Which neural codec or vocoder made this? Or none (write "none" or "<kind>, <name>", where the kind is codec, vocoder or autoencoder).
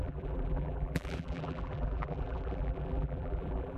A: vocoder, BigVGAN v2